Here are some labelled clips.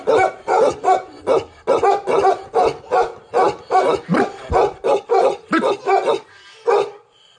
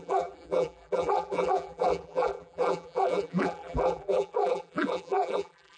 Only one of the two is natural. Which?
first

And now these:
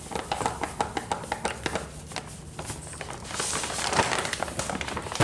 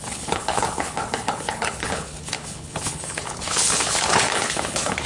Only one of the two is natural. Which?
first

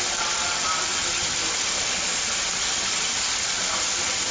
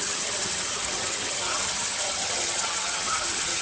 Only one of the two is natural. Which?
first